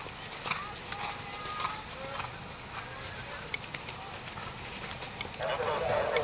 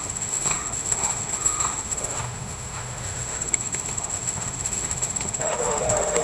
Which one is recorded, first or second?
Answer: first